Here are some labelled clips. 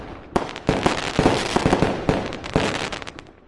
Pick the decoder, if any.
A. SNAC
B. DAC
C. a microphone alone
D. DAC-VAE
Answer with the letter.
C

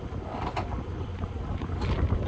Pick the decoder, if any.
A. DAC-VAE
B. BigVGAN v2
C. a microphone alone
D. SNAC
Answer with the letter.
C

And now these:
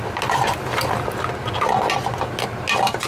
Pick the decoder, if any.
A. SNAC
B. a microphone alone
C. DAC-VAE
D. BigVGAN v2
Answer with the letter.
B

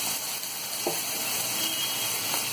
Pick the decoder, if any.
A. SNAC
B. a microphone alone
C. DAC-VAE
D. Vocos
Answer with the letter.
B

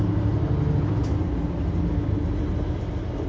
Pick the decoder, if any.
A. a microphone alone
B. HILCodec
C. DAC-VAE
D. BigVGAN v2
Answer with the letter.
A